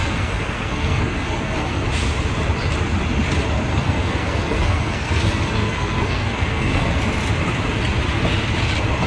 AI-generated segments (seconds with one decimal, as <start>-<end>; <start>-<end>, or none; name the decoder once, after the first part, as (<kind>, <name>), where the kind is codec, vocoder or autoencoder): 0.0-1.9 (codec, SNAC); 3.7-7.0